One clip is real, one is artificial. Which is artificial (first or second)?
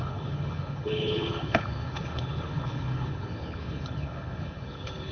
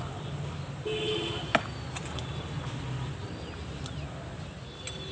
first